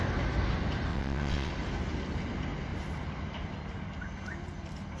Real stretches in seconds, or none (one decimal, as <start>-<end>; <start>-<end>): 0.0-0.9; 1.5-5.0